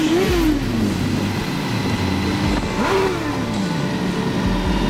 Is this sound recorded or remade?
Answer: recorded